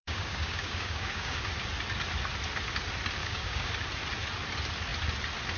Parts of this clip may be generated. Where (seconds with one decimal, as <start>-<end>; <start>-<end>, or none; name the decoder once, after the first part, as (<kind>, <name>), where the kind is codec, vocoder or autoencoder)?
0.0-1.4 (codec, DAC); 3.2-3.7